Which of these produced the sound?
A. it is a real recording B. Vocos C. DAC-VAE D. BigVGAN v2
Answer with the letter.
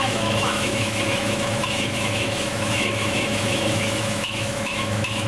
C